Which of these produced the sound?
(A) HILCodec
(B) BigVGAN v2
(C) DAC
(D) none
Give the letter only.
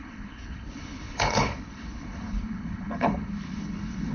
A